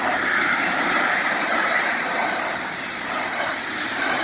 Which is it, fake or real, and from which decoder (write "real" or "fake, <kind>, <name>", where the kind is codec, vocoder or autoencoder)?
fake, vocoder, BigVGAN v2